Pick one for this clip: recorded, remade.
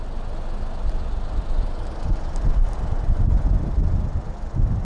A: recorded